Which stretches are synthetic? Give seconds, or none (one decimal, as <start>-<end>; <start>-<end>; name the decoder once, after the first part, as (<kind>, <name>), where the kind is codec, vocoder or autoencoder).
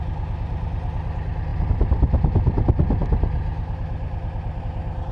none